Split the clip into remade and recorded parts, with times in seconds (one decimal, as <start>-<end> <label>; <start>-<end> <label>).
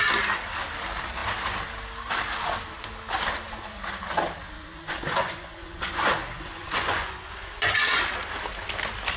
0.0-4.7 recorded; 4.7-8.0 remade; 8.0-9.2 recorded